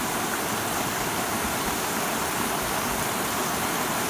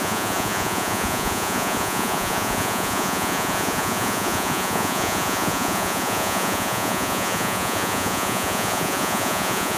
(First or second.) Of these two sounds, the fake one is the second